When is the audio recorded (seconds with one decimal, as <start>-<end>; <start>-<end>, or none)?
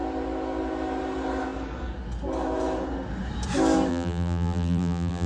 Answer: 0.0-3.9